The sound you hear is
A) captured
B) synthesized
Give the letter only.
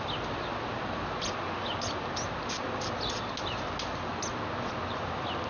A